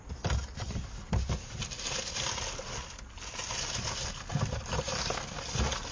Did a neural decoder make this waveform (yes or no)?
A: no